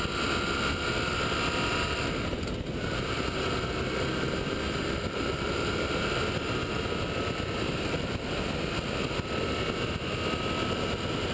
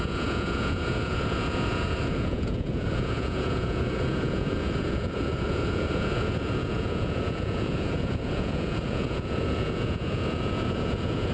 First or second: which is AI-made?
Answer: second